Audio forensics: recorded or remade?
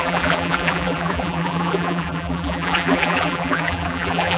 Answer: remade